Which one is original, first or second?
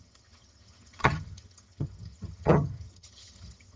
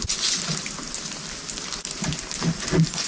second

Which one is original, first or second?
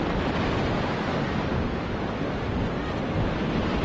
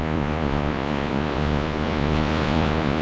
first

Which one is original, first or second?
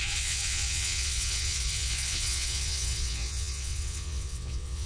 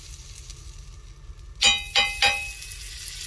second